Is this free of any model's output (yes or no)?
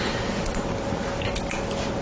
yes